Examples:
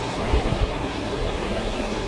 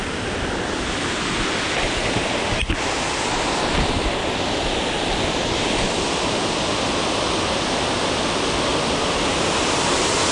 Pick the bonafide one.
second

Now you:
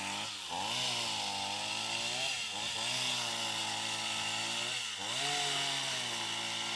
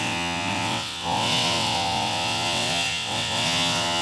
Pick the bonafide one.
first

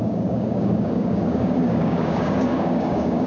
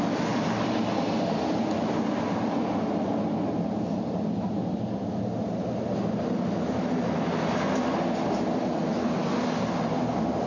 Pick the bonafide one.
second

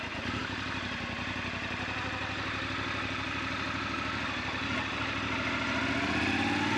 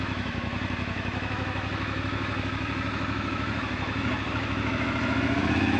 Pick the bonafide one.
first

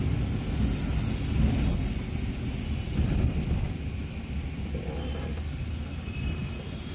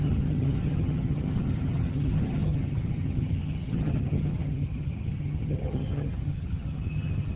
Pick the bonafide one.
first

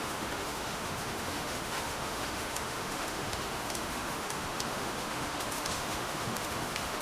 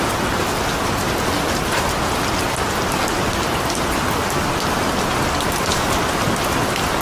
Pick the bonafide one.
second